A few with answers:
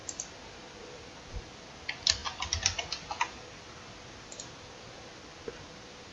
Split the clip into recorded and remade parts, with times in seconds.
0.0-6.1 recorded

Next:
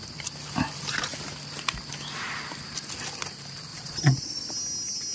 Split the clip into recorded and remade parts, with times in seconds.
0.0-3.7 recorded; 3.7-4.5 remade; 4.5-5.1 recorded